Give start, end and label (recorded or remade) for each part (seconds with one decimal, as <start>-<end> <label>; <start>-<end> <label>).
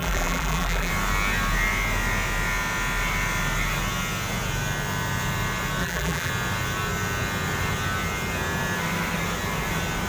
0.0-0.9 remade; 0.9-5.8 recorded; 5.8-6.3 remade; 6.3-10.1 recorded